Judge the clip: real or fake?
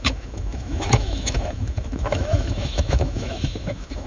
fake